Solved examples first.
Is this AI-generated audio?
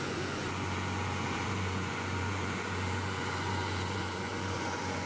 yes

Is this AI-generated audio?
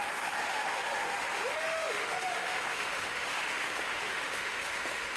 yes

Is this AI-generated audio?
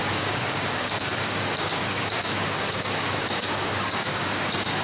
yes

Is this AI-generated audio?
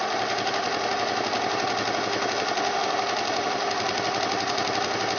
no